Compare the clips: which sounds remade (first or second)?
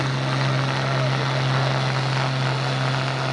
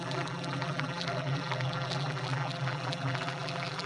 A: second